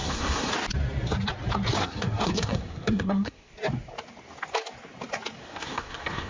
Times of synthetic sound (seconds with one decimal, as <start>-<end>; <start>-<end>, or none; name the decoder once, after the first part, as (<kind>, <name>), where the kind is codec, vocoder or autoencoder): 0.0-0.5 (codec, SNAC); 1.8-3.5; 5.4-6.3